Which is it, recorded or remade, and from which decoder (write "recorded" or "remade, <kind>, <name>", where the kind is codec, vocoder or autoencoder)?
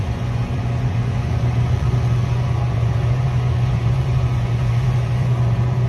remade, vocoder, Vocos